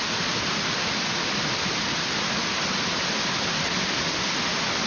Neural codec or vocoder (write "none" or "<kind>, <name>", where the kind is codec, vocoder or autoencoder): none